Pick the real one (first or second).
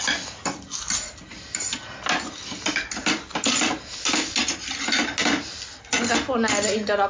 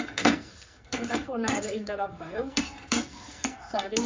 first